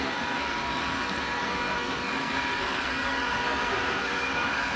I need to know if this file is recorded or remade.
remade